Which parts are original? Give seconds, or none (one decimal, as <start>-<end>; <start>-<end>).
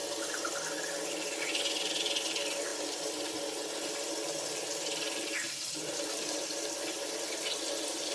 0.0-8.1